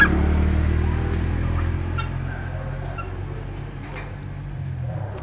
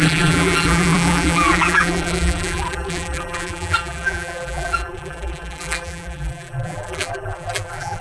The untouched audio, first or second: first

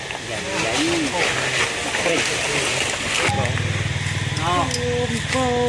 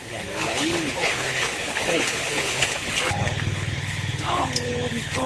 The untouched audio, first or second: first